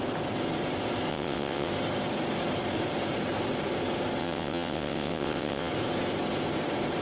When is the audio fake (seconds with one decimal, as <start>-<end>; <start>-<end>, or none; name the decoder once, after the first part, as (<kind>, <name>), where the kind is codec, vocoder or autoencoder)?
1.1-1.7 (vocoder, WaveNeXt); 4.2-5.7